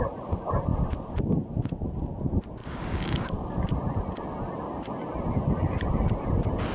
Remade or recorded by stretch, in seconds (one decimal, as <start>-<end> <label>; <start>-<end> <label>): 0.0-2.6 recorded; 2.6-3.2 remade; 3.2-6.7 recorded